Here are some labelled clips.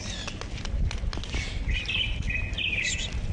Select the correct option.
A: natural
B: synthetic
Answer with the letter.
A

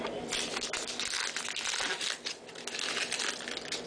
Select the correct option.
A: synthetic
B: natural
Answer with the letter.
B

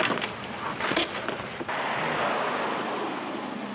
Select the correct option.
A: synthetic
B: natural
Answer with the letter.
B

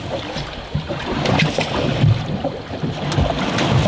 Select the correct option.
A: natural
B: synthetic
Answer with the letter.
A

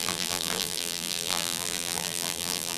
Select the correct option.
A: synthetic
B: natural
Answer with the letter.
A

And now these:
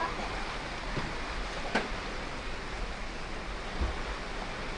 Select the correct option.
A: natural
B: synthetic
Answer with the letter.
A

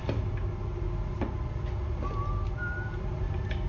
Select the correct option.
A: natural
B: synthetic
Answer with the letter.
A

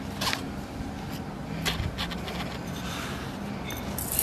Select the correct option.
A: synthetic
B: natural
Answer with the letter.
B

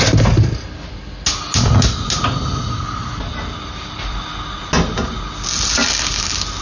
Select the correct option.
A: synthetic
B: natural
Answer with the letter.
B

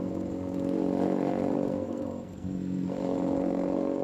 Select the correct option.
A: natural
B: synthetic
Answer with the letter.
B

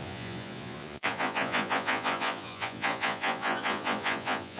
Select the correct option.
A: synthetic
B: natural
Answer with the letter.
A